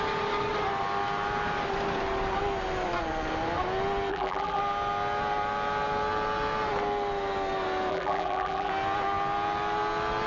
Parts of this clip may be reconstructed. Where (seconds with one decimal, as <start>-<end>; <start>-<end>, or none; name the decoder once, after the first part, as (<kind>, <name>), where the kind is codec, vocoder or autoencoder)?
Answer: 4.1-4.6 (vocoder, BigVGAN v2); 7.9-8.7